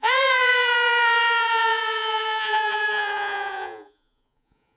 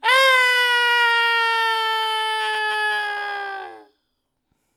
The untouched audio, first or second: second